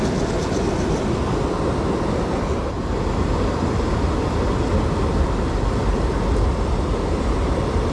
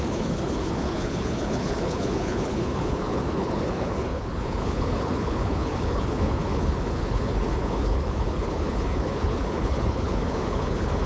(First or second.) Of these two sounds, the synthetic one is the second